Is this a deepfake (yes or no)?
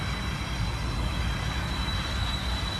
no